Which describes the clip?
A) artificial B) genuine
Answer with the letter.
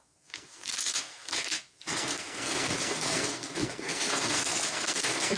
A